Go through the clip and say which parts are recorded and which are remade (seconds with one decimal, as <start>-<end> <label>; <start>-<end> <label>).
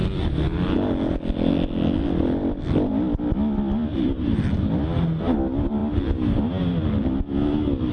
0.0-3.9 recorded; 3.9-4.5 remade; 4.5-7.9 recorded